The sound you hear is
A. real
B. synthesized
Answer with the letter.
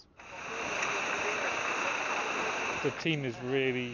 A